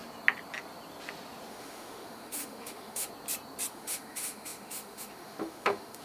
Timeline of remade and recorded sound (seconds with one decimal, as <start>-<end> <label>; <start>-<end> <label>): 0.0-1.5 recorded; 1.5-3.1 remade; 3.1-3.7 recorded; 3.7-6.0 remade

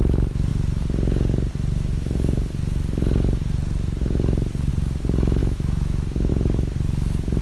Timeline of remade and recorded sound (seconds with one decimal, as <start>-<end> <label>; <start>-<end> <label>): 0.0-5.4 recorded; 5.4-6.3 remade; 6.3-7.4 recorded

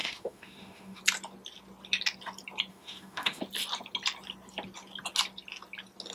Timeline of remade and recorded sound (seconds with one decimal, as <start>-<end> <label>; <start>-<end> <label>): 0.0-1.0 remade; 1.0-2.7 recorded; 2.7-3.4 remade; 3.4-6.1 recorded

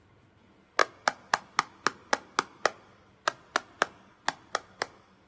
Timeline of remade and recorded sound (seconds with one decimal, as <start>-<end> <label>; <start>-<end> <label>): 0.0-5.3 recorded

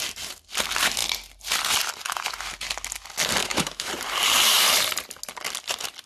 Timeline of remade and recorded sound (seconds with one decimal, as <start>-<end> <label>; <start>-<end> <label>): 0.0-3.4 recorded; 3.4-3.9 remade; 3.9-6.1 recorded